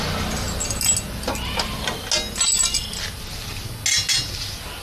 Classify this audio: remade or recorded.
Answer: recorded